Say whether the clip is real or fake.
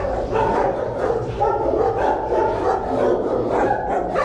fake